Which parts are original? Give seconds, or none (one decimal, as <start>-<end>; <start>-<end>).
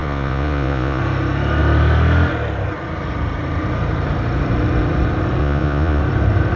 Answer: 1.0-5.4; 6.0-6.6